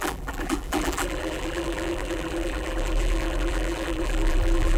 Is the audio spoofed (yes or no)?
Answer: yes